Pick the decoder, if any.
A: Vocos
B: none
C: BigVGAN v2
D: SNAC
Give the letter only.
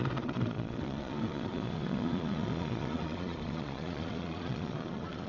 A